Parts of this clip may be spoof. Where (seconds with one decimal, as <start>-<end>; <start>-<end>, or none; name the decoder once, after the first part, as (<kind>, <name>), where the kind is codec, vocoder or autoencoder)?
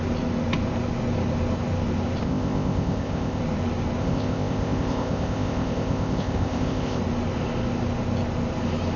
2.2-3.4 (codec, ZipCodec); 4.0-7.0